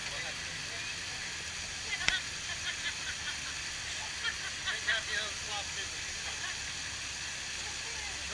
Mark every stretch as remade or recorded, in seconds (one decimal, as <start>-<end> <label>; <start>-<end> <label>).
0.0-8.3 recorded